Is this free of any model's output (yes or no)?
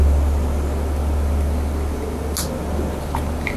yes